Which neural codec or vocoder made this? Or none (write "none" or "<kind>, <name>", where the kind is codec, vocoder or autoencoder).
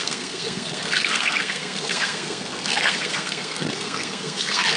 codec, SNAC